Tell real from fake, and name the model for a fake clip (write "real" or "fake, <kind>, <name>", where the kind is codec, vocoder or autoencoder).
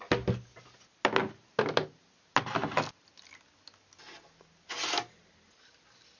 real